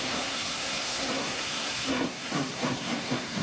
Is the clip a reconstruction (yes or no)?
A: yes